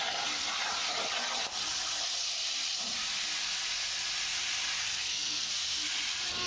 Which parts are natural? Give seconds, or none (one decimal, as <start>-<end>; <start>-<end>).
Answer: 0.0-4.8; 5.5-6.5